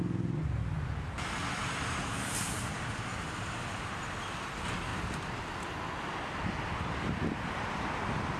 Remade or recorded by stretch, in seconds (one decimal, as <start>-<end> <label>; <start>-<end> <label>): 0.0-8.4 recorded